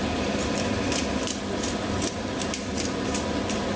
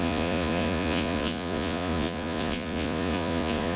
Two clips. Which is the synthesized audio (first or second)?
second